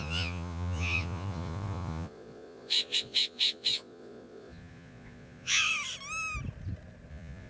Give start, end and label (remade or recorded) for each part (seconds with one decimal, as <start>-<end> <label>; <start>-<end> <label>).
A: 0.0-5.7 remade; 5.7-7.1 recorded; 7.1-7.5 remade